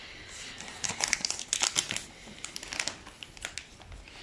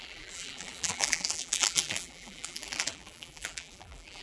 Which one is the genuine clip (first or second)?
first